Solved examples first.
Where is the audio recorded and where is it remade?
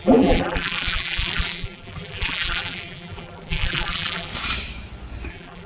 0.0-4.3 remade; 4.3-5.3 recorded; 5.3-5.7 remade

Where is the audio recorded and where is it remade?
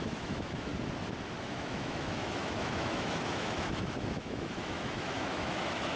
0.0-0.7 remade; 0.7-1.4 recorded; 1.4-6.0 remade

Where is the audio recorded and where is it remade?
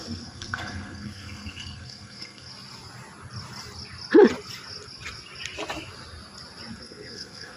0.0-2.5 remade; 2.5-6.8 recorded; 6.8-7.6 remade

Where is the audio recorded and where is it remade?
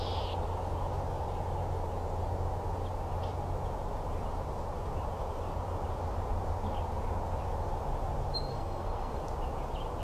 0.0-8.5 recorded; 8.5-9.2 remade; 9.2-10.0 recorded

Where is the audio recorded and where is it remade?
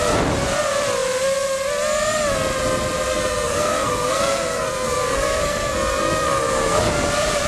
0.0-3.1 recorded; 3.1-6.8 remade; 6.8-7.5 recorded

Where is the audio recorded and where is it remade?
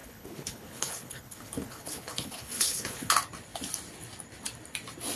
0.0-3.1 remade; 3.1-5.2 recorded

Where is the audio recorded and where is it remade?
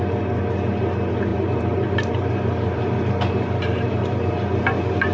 0.0-1.3 recorded; 1.3-4.3 remade; 4.3-5.1 recorded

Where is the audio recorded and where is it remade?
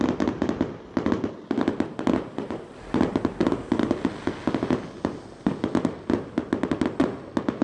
0.0-7.6 recorded